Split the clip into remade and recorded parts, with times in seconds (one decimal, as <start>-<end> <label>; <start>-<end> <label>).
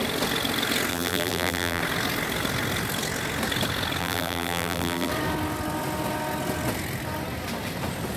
0.0-0.9 recorded; 0.9-1.8 remade; 1.8-4.0 recorded; 4.0-5.1 remade; 5.1-8.2 recorded